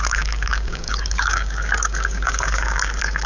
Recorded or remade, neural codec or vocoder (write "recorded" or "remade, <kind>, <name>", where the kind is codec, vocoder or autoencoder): remade, codec, DAC